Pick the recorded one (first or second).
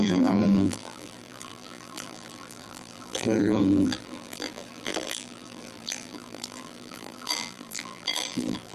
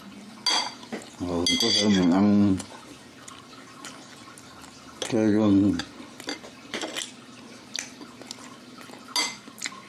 second